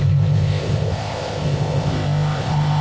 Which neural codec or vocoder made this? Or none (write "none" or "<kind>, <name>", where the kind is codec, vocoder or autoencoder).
codec, ZipCodec